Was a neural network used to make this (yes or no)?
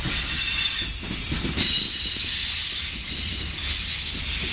no